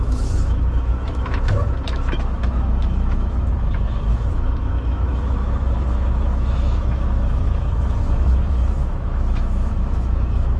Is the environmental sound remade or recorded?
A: remade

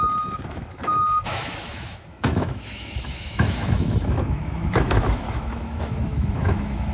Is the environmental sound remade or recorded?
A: remade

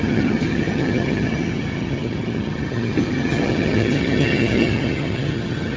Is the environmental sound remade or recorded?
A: remade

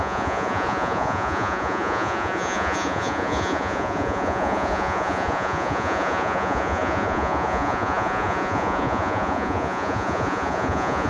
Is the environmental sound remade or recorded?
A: remade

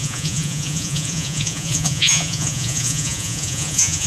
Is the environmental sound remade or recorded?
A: remade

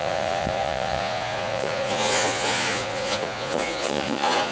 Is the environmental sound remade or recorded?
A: remade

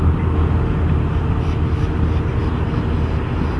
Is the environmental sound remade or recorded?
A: recorded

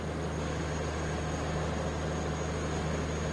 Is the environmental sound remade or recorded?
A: recorded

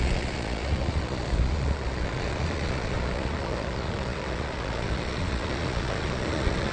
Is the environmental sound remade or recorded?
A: remade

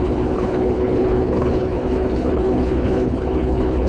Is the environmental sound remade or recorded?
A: remade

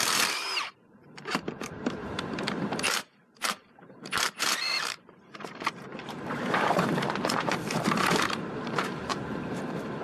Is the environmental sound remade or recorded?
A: remade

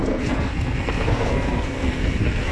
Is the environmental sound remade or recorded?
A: remade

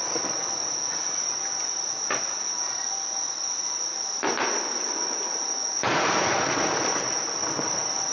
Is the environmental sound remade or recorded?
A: recorded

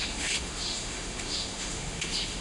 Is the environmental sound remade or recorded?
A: remade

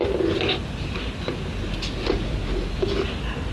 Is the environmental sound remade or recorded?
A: recorded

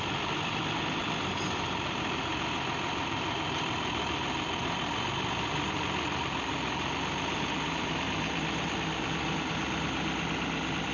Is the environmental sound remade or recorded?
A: remade